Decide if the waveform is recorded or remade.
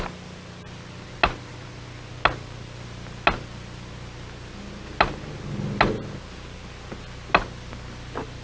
recorded